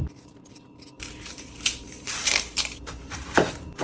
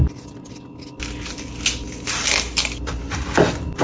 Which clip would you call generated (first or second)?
first